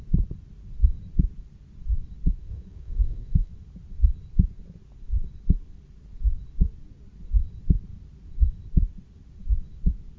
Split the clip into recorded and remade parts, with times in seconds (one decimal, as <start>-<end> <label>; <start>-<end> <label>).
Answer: 0.0-2.4 recorded; 2.4-3.5 remade; 3.5-10.2 recorded